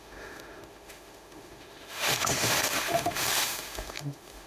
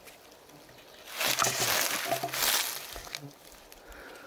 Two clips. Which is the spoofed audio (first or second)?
first